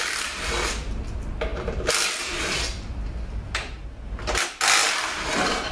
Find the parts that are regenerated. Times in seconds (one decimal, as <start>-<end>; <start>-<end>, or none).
none